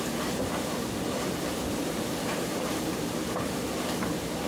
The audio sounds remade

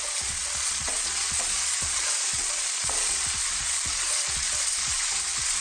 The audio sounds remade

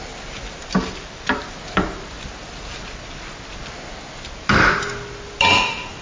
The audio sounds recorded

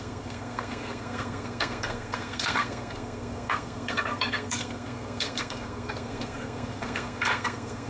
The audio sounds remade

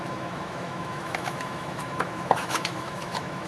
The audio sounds remade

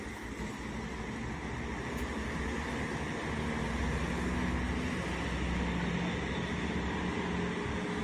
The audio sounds recorded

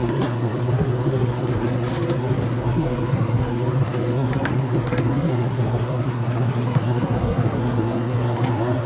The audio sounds remade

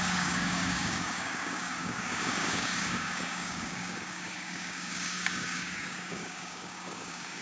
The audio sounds remade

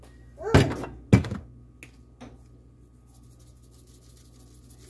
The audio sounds recorded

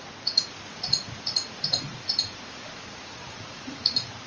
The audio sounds remade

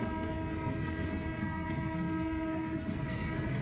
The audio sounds remade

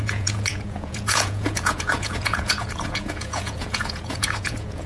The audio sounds remade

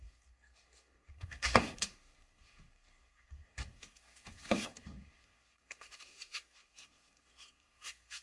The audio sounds remade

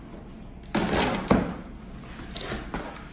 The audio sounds recorded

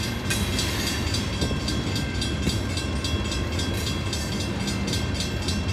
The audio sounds recorded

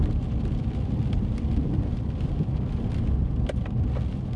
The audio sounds recorded